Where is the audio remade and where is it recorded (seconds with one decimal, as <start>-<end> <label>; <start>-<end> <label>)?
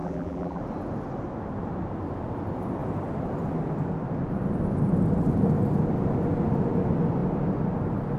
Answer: 0.0-0.6 remade; 0.6-8.2 recorded